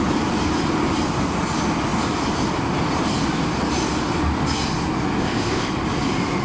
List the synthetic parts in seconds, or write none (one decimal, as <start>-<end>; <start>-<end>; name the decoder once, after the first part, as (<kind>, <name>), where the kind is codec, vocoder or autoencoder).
5.2-5.7 (codec, ZipCodec)